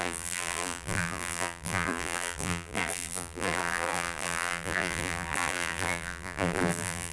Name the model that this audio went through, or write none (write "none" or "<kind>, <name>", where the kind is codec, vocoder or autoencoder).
vocoder, BigVGAN v2